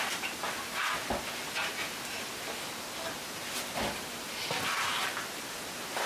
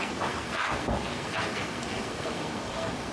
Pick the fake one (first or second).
second